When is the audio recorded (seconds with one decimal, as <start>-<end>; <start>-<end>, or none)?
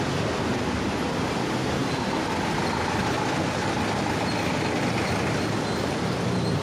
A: 0.0-6.6